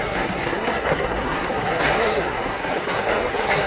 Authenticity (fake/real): fake